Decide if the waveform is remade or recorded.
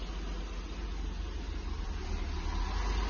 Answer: recorded